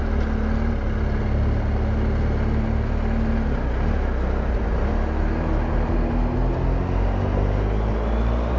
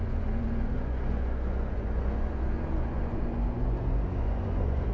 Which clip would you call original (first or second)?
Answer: first